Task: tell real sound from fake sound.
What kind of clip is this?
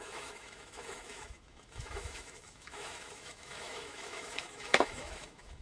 fake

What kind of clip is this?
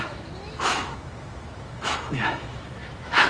fake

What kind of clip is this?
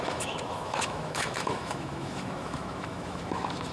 fake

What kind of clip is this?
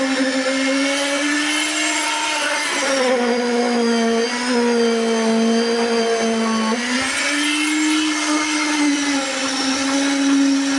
real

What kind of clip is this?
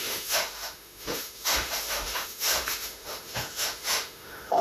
fake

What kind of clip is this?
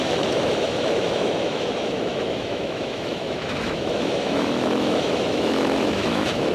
fake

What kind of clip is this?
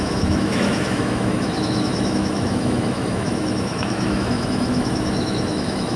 fake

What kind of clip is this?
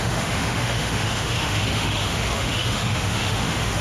fake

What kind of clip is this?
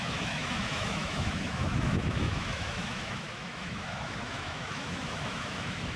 fake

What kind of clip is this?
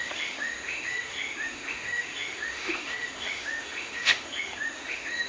fake